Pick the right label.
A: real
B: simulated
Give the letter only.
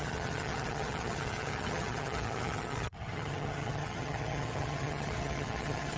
B